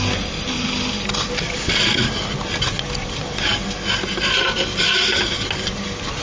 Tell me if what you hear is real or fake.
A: real